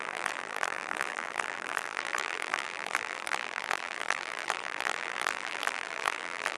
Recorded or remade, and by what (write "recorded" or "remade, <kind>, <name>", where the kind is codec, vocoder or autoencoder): remade, vocoder, BigVGAN v2